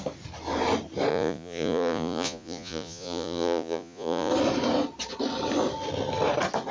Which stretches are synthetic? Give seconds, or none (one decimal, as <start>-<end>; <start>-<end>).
1.1-4.3